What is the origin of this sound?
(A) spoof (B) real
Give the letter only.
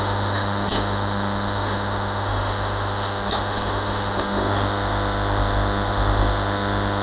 A